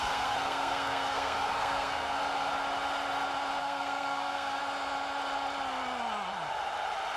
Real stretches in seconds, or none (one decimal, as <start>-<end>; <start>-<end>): 2.2-3.6; 4.6-7.2